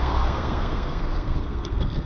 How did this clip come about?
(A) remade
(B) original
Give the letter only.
A